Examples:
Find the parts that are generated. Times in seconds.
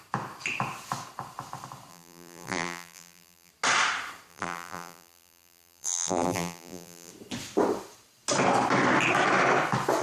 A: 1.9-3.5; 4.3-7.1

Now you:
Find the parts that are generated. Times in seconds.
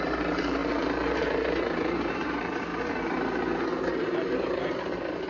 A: 0.0-2.7; 3.9-5.3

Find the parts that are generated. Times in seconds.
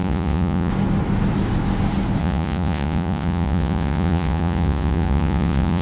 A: 0.0-0.7; 2.2-5.8